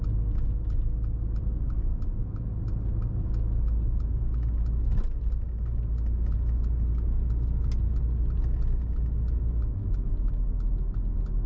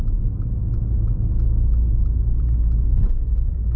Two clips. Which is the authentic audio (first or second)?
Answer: first